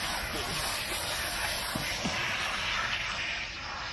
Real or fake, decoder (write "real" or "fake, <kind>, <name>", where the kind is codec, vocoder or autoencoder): real